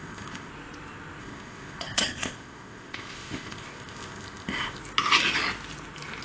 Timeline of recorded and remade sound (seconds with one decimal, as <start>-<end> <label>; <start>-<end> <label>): 0.0-0.5 remade; 0.5-1.2 recorded; 1.2-4.8 remade; 4.8-6.2 recorded